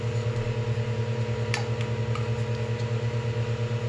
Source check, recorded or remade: recorded